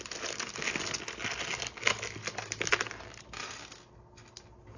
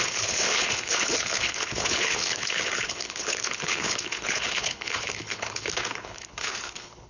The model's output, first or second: second